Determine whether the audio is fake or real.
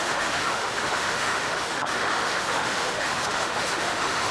fake